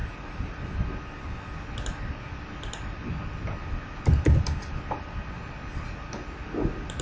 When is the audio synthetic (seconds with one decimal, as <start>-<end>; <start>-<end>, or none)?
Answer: none

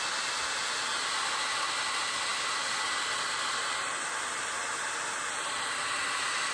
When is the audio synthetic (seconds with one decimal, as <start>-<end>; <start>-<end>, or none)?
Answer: none

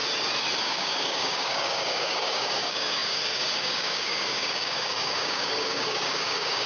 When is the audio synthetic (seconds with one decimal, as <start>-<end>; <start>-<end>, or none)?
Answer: 0.6-6.7

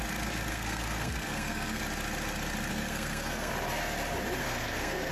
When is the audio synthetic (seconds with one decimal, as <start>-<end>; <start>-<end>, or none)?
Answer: 0.5-1.8; 2.7-3.5; 4.4-5.1

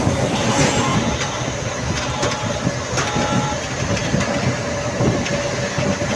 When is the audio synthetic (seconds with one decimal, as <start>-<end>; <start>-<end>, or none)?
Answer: none